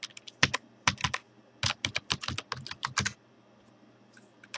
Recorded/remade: recorded